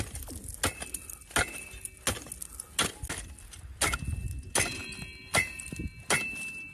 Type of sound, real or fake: real